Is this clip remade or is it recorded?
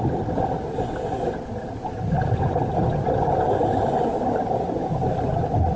recorded